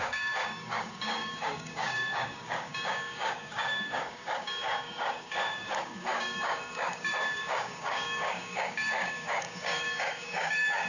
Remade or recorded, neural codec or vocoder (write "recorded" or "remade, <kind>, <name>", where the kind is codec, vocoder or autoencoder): remade, codec, DAC